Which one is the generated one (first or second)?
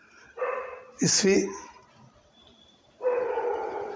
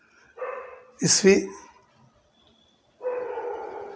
first